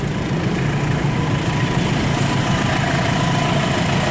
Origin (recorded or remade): remade